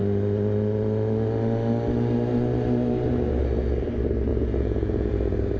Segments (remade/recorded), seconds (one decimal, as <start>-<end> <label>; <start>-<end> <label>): 0.0-4.3 recorded; 4.3-5.1 remade; 5.1-5.6 recorded